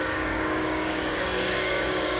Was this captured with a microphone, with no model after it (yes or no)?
no